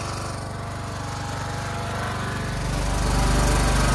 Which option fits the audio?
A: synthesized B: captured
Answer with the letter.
B